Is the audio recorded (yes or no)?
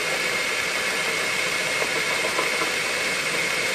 yes